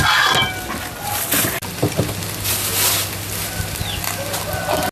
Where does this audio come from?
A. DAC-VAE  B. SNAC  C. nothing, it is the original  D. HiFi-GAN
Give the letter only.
C